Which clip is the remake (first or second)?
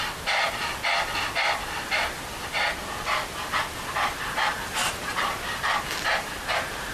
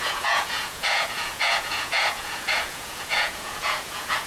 second